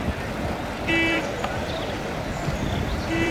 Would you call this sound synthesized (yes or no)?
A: yes